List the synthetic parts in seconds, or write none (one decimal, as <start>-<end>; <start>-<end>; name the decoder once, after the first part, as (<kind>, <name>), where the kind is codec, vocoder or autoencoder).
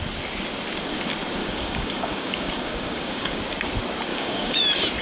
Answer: 1.4-3.4 (codec, DAC); 4.1-4.6